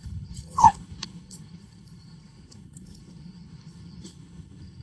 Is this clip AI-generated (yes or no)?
yes